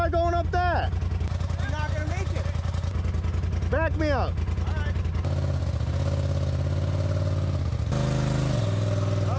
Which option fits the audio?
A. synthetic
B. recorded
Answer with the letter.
B